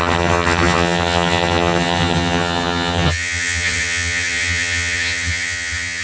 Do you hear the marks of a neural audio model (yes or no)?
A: yes